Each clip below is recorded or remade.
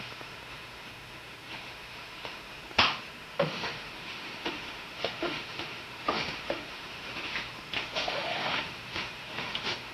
remade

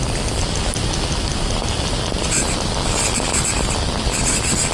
recorded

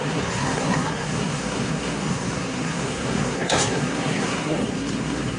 remade